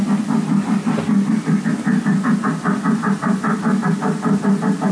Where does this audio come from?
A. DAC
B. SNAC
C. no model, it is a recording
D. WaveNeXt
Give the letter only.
C